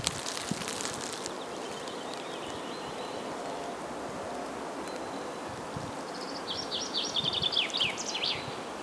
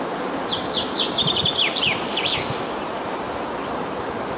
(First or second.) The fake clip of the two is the second